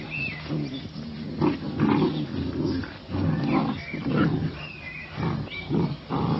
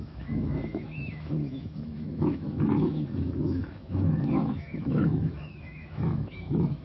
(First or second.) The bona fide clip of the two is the first